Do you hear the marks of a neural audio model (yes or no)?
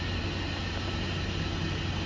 no